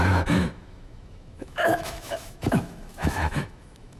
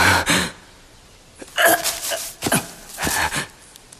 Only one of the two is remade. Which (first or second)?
first